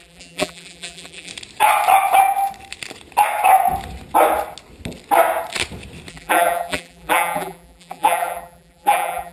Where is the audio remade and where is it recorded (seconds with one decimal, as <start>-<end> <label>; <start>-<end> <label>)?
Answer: 0.0-1.3 remade; 1.3-6.1 recorded; 6.1-9.3 remade